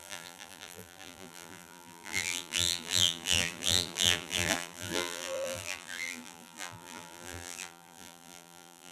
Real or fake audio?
fake